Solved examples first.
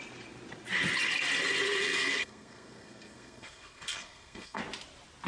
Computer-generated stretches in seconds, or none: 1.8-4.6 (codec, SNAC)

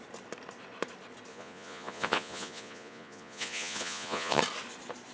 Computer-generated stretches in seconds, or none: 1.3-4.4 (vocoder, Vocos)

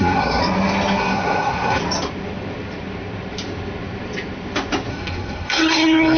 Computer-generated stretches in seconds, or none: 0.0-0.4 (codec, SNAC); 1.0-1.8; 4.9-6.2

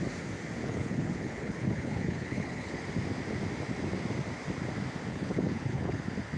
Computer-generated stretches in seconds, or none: 0.6-2.8 (codec, HILCodec); 5.1-6.0

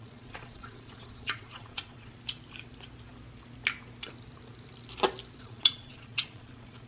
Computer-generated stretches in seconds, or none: 0.0-2.1 (vocoder, Vocos); 5.4-6.9

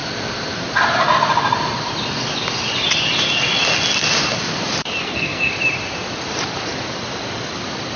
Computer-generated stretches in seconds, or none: 5.0-5.5 (codec, SNAC)